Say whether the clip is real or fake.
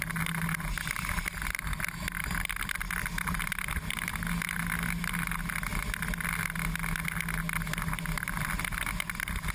real